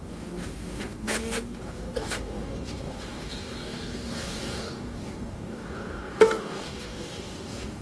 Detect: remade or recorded remade